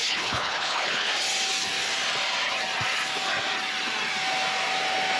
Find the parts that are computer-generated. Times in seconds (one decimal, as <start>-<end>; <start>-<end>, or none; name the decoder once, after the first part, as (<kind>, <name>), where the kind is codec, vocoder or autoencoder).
0.0-1.1 (codec, HILCodec)